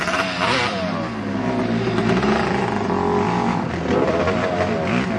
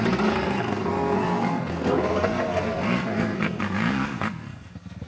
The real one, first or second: first